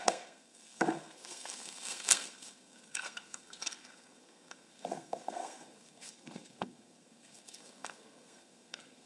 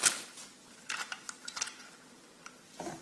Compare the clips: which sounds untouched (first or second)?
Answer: second